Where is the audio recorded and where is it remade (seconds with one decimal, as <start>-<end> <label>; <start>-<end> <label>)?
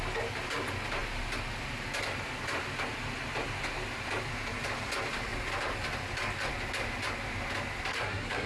0.0-7.9 recorded; 7.9-8.5 remade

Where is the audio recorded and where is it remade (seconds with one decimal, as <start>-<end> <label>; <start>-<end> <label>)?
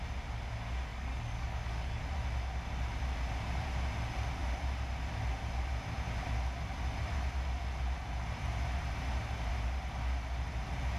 0.0-0.9 recorded; 0.9-2.0 remade; 2.0-11.0 recorded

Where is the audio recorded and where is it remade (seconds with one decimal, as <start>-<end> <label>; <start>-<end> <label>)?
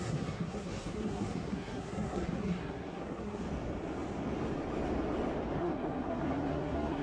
0.0-3.4 remade; 3.4-5.6 recorded; 5.6-7.0 remade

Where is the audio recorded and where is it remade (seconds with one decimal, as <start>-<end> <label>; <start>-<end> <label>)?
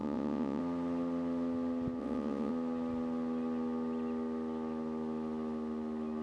0.0-0.6 remade; 0.6-2.0 recorded; 2.0-2.5 remade; 2.5-6.2 recorded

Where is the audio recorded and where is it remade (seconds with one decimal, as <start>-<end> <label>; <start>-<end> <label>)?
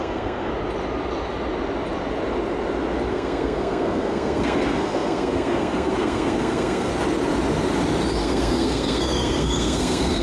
0.0-0.5 remade; 0.5-3.1 recorded; 3.1-6.9 remade; 6.9-8.2 recorded; 8.2-10.2 remade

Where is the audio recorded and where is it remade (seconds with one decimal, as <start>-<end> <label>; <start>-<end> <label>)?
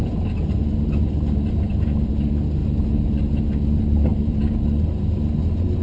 0.0-4.1 recorded; 4.1-4.7 remade; 4.7-5.8 recorded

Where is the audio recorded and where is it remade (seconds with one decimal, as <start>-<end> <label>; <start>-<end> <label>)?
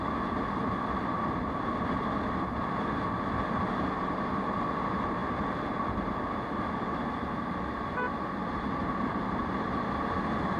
0.0-10.6 recorded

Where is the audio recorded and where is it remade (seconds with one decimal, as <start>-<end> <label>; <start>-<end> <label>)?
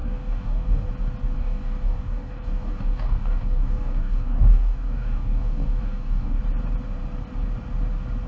0.0-0.9 remade; 0.9-1.4 recorded; 1.4-6.4 remade; 6.4-8.3 recorded